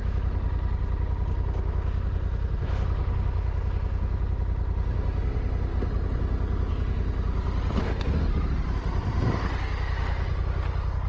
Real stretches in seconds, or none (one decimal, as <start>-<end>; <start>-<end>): 0.0-11.1